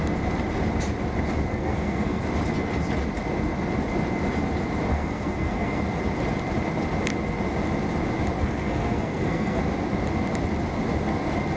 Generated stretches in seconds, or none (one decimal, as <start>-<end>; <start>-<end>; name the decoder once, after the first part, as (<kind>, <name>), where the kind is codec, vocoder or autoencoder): 1.5-2.2 (codec, SNAC); 4.9-5.8; 8.4-9.6